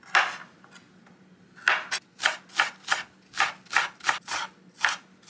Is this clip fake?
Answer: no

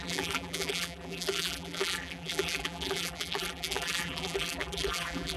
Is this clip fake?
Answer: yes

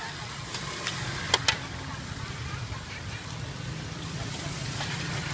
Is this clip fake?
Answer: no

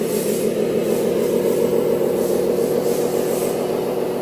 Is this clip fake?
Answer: no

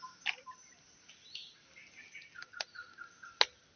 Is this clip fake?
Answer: no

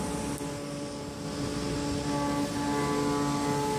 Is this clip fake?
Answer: no